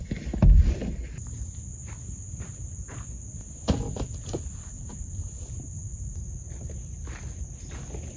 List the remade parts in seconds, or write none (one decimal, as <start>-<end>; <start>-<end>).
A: 5.8-7.4